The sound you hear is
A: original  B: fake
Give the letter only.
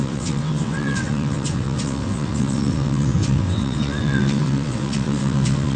B